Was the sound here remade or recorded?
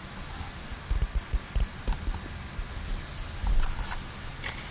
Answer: recorded